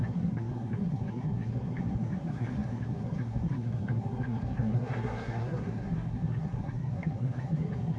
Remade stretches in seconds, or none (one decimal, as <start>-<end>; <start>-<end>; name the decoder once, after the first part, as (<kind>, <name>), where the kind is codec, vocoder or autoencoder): 0.0-8.0 (codec, SNAC)